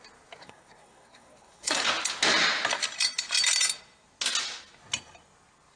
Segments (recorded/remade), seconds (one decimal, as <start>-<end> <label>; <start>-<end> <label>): 0.0-0.4 recorded; 0.4-1.9 remade; 1.9-5.8 recorded